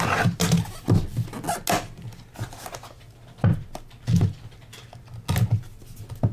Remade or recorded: recorded